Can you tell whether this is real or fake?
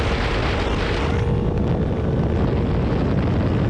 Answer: real